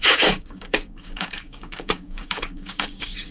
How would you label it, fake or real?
fake